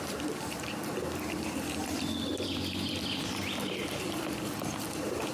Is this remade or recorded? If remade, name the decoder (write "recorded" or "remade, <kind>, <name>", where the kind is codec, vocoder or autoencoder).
remade, vocoder, BigVGAN v2